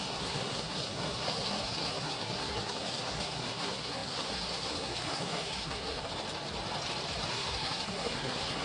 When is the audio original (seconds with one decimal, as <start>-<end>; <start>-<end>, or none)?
6.1-7.3